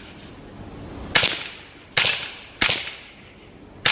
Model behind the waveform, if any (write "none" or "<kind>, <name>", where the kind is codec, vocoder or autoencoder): none